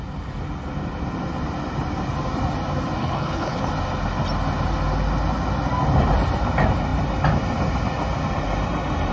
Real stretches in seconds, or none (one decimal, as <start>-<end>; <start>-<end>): 0.0-3.0; 3.7-9.1